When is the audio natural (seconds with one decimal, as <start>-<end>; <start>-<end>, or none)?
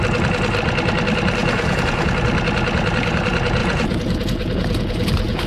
0.0-1.4; 2.1-3.6